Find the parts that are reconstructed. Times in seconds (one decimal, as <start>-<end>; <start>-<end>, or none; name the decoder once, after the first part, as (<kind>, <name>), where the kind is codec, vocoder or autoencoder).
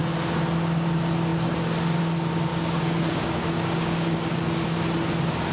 2.5-4.3 (codec, DAC)